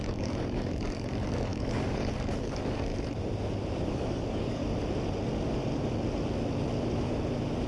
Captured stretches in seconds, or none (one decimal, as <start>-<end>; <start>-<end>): 2.9-3.9; 4.6-7.7